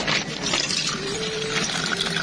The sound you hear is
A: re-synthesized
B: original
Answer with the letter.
A